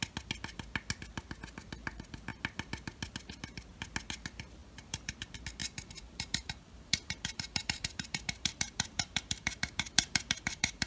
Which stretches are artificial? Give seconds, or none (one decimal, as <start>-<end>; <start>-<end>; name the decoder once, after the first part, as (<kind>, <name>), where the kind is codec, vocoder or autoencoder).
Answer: 4.6-5.1 (vocoder, BigVGAN v2); 5.6-10.9